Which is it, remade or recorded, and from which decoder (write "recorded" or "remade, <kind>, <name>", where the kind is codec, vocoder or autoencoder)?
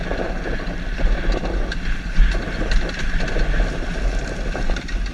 recorded